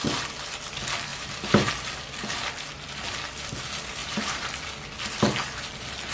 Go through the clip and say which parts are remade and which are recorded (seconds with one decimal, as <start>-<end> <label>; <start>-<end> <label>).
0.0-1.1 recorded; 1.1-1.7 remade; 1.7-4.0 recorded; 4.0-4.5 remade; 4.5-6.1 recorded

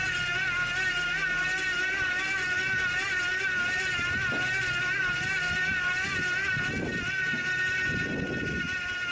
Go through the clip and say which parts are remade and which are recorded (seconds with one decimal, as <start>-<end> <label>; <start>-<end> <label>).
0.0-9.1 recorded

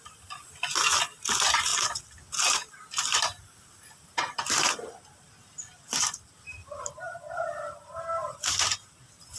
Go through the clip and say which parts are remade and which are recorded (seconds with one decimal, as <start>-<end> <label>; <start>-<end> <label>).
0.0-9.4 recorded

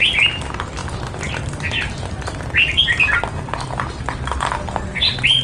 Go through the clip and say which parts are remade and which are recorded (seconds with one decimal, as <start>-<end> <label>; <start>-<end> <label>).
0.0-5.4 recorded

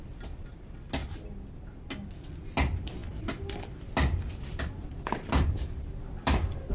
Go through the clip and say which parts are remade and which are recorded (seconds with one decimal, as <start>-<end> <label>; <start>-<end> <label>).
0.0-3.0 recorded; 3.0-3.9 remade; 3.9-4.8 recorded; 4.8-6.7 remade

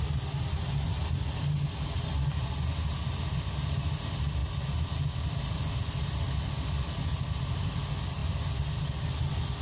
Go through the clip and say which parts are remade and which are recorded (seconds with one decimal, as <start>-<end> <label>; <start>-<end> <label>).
0.0-4.4 recorded; 4.4-6.1 remade; 6.1-9.6 recorded

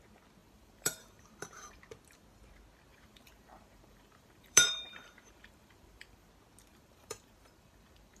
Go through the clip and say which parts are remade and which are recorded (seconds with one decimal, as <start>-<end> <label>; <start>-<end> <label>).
0.0-0.4 recorded; 0.4-1.8 remade; 1.8-2.9 recorded; 2.9-6.3 remade; 6.3-6.7 recorded; 6.7-8.2 remade

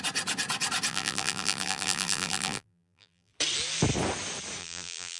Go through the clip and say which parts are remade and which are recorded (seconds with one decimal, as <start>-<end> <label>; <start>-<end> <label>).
0.0-0.9 recorded; 0.9-3.3 remade; 3.3-4.6 recorded; 4.6-5.2 remade